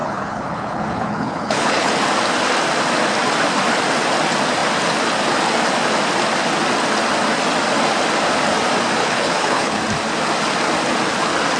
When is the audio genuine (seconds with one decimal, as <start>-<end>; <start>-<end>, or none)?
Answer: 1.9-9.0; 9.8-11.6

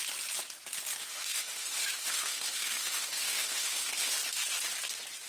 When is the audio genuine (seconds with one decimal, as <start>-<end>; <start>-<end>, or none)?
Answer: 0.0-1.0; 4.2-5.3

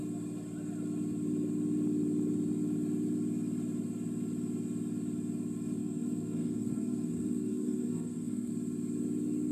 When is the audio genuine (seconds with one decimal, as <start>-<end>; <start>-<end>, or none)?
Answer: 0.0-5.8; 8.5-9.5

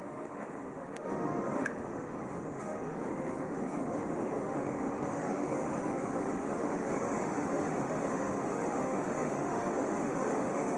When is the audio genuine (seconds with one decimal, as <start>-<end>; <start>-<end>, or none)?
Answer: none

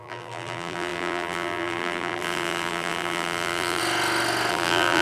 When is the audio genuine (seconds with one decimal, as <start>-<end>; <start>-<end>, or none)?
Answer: 3.8-4.5

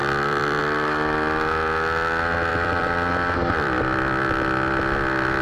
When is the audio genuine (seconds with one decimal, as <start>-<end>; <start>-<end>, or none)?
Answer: 0.6-2.5; 3.8-5.4